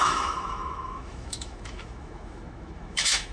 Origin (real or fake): fake